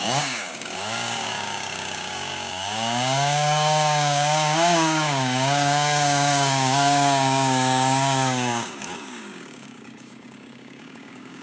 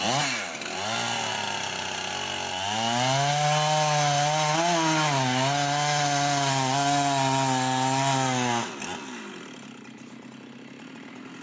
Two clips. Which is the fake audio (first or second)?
first